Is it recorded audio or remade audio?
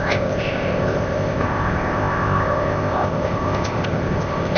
remade